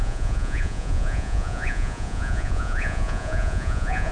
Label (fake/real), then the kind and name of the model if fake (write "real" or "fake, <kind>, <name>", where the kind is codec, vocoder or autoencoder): fake, vocoder, Vocos